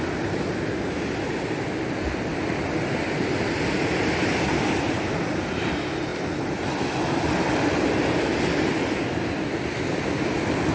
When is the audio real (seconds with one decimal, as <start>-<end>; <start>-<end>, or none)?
0.0-10.7